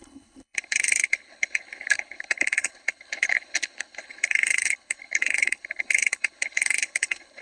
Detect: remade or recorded remade